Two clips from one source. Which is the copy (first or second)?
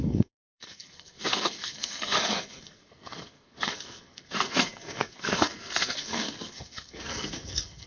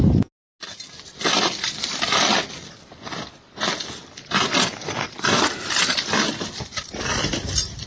first